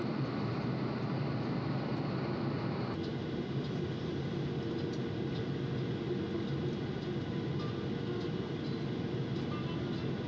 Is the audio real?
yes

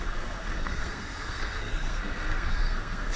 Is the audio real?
no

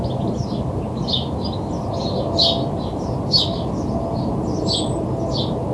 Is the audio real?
yes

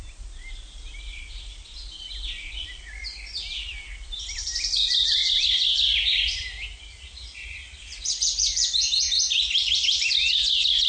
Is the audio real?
yes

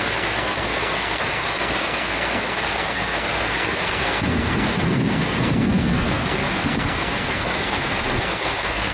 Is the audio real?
no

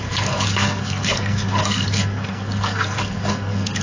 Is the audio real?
no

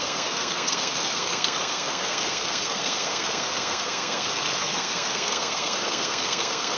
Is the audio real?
no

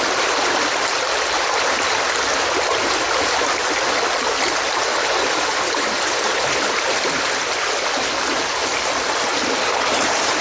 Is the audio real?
yes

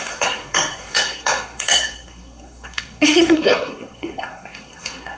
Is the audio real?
no